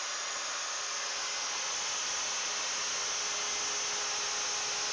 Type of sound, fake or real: real